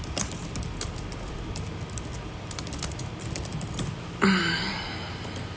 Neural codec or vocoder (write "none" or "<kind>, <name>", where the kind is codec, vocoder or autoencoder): none